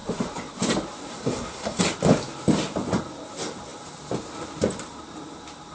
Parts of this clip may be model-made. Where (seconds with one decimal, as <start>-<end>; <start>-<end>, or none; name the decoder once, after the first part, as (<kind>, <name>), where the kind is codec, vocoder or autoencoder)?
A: 1.1-1.8 (codec, SNAC)